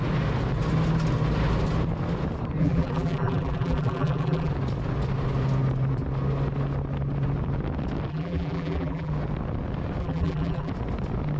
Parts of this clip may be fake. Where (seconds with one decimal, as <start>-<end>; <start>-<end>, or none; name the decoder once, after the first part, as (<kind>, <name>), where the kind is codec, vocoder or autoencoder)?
2.6-4.5 (vocoder, BigVGAN v2); 8.1-9.1; 10.0-10.7